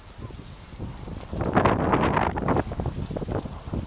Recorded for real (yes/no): yes